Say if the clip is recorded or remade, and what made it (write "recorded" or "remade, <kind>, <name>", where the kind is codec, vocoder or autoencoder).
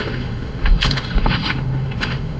remade, autoencoder, DAC-VAE